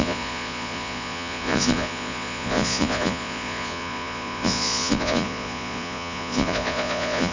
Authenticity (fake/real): fake